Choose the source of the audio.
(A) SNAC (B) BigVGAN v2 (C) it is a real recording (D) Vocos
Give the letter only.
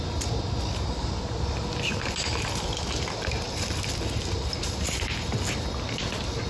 C